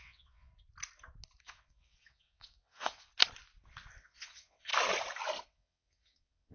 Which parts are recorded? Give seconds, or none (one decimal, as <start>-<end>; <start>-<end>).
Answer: 0.5-1.4; 3.1-4.0; 4.7-5.4